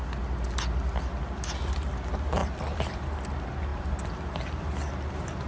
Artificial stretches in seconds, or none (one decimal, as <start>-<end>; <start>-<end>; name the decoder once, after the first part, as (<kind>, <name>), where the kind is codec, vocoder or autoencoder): 2.4-3.2 (vocoder, BigVGAN v2); 3.7-4.6